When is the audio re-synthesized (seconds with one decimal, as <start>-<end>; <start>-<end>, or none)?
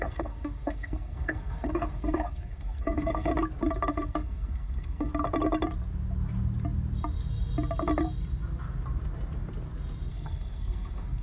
0.0-3.3; 3.9-5.1; 10.1-11.2